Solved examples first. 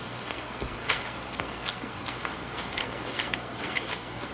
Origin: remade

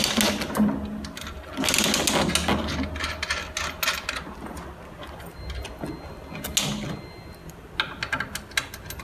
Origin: recorded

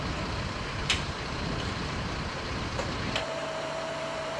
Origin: remade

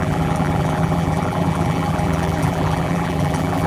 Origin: remade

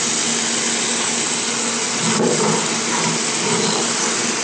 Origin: recorded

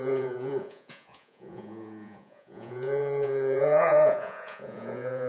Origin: remade